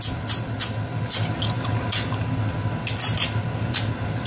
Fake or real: real